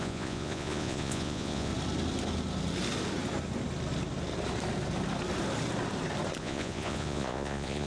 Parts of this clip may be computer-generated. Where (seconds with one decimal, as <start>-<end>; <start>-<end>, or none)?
0.0-1.7; 6.4-7.9